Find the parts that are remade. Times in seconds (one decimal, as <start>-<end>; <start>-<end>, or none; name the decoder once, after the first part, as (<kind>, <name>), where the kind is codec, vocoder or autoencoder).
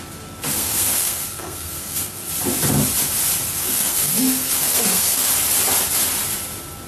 0.5-2.3 (codec, SNAC); 3.6-5.3